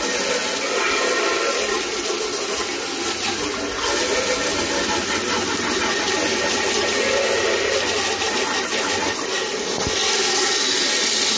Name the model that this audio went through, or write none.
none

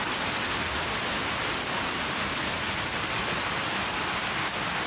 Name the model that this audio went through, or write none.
none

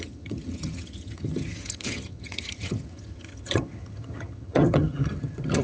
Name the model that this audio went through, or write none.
vocoder, HiFi-GAN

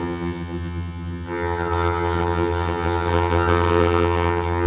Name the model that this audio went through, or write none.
vocoder, HiFi-GAN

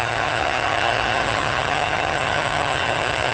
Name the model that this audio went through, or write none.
vocoder, HiFi-GAN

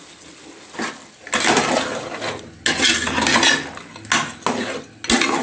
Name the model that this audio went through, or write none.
none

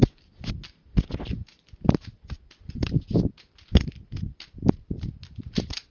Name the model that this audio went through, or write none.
none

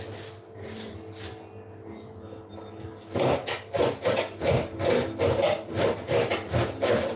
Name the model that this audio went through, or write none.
none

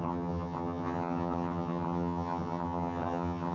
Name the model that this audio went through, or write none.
vocoder, HiFi-GAN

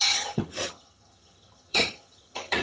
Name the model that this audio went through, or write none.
vocoder, HiFi-GAN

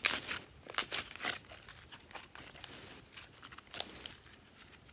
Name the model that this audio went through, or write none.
none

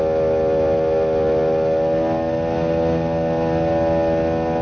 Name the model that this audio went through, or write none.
none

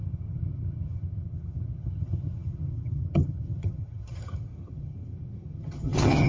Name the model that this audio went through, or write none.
vocoder, HiFi-GAN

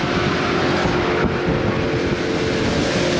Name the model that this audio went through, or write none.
none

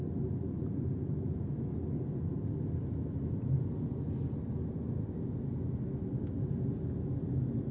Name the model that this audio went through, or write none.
none